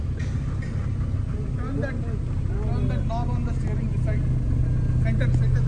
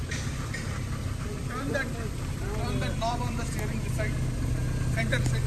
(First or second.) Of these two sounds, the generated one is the second